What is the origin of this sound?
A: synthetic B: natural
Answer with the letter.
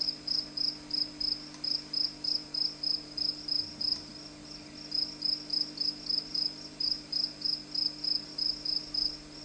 B